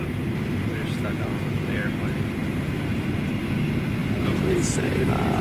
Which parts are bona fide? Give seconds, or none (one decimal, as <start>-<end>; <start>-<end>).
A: 0.0-2.4; 3.2-4.0